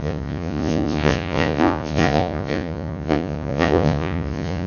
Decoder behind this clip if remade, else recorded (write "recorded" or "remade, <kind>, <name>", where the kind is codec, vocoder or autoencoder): remade, vocoder, Vocos